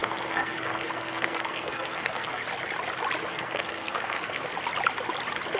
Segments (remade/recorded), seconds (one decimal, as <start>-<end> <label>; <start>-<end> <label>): 0.0-2.4 remade; 2.4-3.3 recorded; 3.3-4.5 remade; 4.5-5.6 recorded